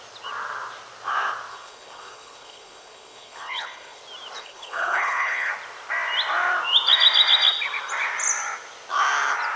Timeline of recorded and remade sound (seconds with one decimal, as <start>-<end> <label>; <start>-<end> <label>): 0.0-1.5 recorded; 1.5-4.0 remade; 4.0-4.4 recorded; 4.4-5.5 remade; 5.5-9.6 recorded